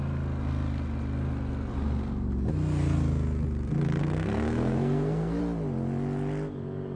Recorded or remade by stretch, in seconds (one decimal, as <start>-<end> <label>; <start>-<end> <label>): 0.0-4.0 recorded; 4.0-5.4 remade; 5.4-7.0 recorded